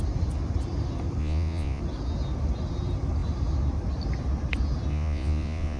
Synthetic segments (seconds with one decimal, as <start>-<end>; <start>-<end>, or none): 1.2-1.8; 4.9-5.8